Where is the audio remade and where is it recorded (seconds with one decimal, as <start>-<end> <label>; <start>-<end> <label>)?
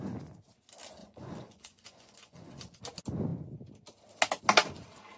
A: 0.0-1.0 recorded; 1.0-2.8 remade; 2.8-5.2 recorded